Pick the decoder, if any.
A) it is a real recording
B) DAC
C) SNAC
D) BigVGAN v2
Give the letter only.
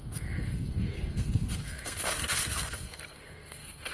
C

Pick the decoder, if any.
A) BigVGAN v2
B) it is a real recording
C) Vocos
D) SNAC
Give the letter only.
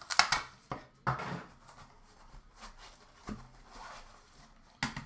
B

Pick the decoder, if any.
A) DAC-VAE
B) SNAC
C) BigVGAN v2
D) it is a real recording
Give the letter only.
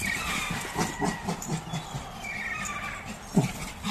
D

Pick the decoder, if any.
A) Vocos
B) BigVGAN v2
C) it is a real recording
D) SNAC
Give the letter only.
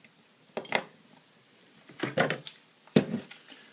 C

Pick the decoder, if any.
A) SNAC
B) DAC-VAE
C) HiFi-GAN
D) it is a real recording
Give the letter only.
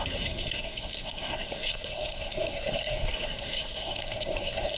A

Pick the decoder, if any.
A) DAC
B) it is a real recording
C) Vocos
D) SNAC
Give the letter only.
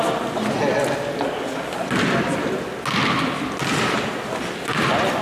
B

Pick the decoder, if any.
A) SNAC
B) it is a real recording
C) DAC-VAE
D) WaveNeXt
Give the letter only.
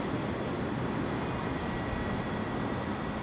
B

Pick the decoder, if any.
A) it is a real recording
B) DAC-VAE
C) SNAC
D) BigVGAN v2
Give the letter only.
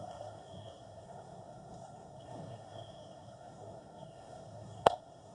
C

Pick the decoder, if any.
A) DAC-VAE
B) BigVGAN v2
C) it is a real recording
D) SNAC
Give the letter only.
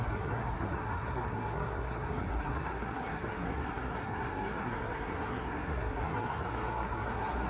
D